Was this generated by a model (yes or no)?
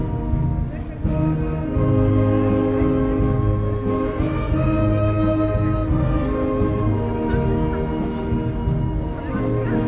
no